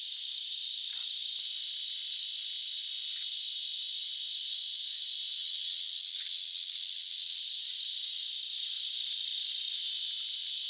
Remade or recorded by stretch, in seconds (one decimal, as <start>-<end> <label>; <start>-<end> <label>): 0.0-5.4 recorded; 5.4-7.4 remade; 7.4-10.7 recorded